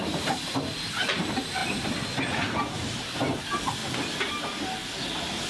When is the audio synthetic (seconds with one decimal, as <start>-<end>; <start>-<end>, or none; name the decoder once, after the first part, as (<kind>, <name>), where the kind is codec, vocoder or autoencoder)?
0.0-1.6 (vocoder, BigVGAN v2); 2.2-3.8; 4.3-4.8